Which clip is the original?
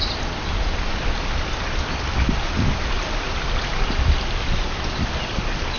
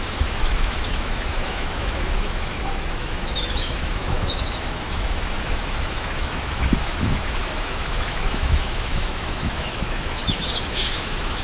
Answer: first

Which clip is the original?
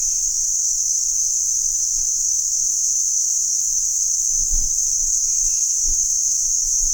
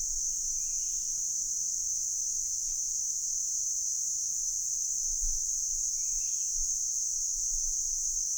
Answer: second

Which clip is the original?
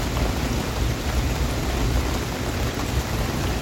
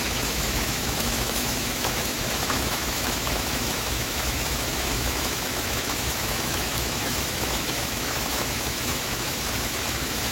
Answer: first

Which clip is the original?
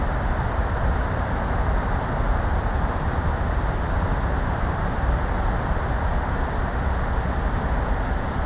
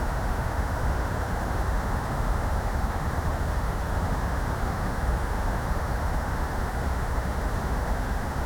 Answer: first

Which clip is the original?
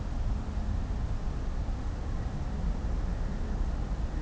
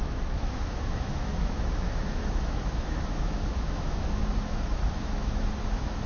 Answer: first